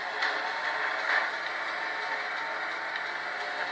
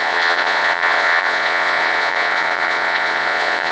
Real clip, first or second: first